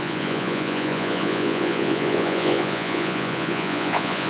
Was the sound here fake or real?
fake